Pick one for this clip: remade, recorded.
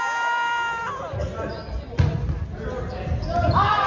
recorded